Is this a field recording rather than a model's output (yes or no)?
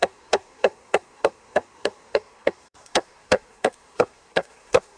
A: no